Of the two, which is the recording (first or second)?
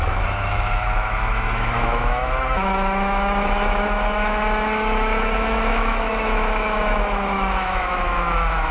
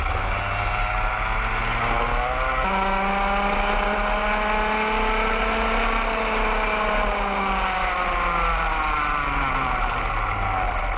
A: second